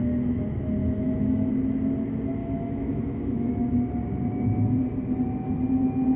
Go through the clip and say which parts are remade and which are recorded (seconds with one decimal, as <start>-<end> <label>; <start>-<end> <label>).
0.0-0.8 recorded; 0.8-1.5 remade; 1.5-2.4 recorded; 2.4-3.5 remade; 3.5-6.2 recorded